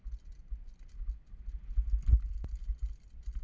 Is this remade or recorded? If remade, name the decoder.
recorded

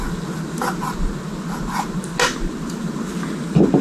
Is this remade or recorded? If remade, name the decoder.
recorded